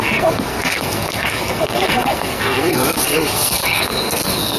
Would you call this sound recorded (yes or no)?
no